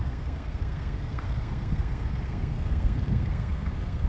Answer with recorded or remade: remade